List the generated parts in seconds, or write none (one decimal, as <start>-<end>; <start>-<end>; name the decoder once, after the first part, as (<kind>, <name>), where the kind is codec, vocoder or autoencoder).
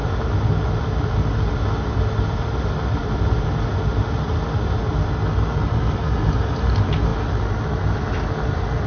none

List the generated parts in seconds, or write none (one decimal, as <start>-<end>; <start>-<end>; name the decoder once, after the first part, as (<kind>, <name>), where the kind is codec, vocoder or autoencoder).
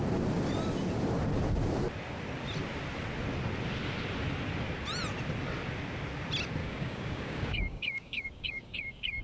6.6-9.2 (codec, DAC)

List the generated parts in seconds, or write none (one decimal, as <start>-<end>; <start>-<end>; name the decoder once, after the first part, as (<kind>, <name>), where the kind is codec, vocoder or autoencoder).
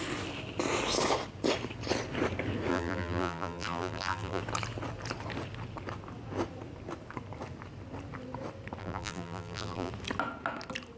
2.7-4.4 (vocoder, BigVGAN v2); 8.8-9.9